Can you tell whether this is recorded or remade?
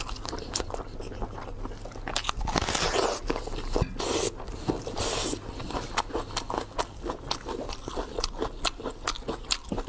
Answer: recorded